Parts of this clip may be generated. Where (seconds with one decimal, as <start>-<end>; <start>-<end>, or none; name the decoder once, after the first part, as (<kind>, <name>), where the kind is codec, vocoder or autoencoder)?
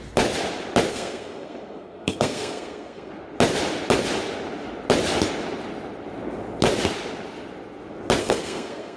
0.9-3.1 (codec, SNAC); 8.2-9.0